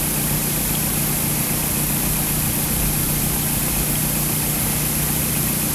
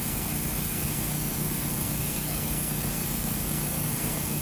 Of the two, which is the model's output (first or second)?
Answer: second